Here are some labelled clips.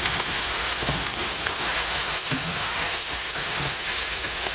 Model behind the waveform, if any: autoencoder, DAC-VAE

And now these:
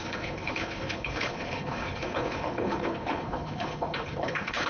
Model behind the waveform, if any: codec, HILCodec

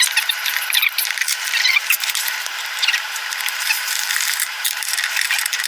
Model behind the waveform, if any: vocoder, BigVGAN v2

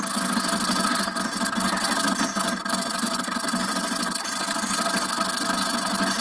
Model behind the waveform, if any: none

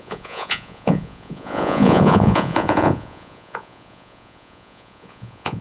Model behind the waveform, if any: vocoder, Vocos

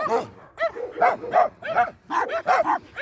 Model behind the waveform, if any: none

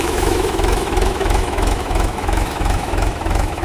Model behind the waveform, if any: autoencoder, DAC-VAE